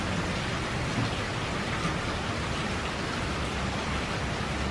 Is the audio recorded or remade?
recorded